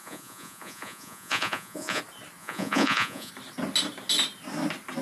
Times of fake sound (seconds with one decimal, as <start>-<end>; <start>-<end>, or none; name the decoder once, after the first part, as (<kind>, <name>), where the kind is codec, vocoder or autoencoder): 0.0-2.0 (vocoder, Vocos); 2.4-3.3